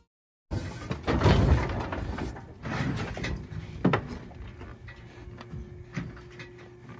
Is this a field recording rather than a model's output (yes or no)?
yes